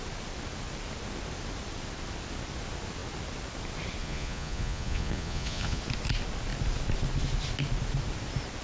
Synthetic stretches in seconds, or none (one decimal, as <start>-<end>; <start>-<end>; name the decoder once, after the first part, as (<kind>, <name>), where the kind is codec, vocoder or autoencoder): 4.0-5.8 (vocoder, Vocos)